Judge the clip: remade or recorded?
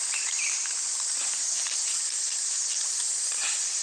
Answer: remade